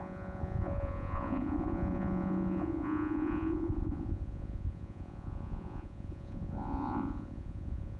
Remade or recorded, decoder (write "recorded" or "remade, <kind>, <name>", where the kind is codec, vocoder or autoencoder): remade, vocoder, Vocos